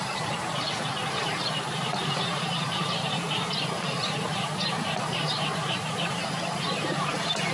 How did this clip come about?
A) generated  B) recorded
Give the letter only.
A